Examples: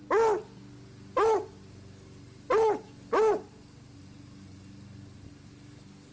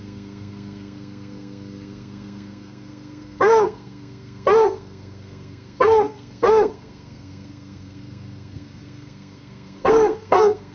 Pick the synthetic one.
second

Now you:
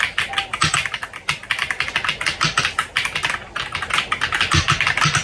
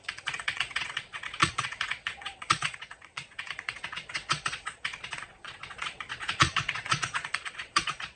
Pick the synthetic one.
second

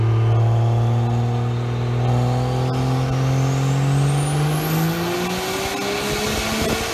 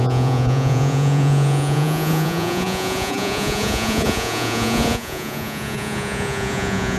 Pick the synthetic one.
second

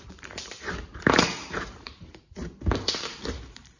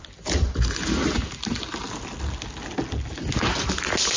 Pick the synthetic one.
first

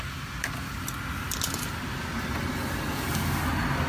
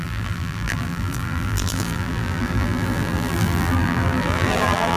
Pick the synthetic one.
second